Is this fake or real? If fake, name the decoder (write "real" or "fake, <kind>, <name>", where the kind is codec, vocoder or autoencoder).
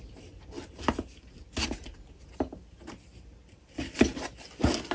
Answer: real